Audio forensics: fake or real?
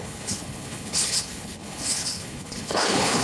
fake